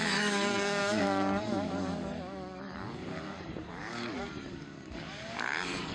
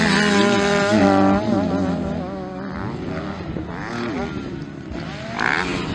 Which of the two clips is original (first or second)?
second